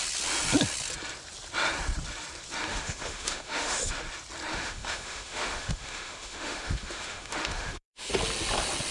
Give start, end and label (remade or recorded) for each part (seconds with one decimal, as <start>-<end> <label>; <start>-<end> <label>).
0.0-2.7 recorded; 2.7-3.9 remade; 3.9-4.5 recorded; 4.5-8.1 remade; 8.1-8.9 recorded